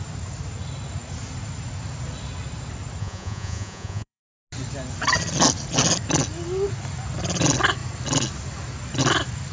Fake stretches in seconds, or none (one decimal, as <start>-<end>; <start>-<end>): 3.0-4.2